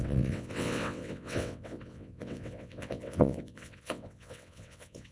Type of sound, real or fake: fake